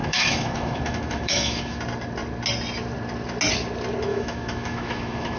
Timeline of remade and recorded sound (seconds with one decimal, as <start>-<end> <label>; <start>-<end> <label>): 0.0-1.8 remade; 1.8-4.1 recorded; 4.1-5.4 remade